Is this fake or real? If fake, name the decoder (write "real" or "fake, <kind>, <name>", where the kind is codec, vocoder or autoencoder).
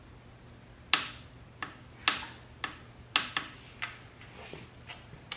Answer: real